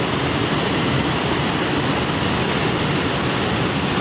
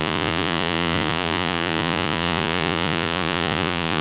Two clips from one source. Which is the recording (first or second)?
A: first